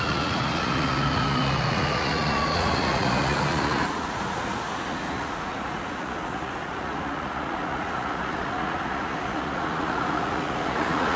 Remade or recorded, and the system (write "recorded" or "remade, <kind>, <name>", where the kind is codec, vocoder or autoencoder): remade, vocoder, Vocos